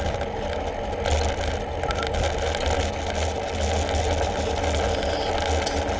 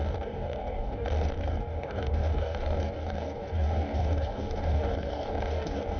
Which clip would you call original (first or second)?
first